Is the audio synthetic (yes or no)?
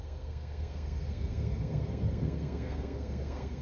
yes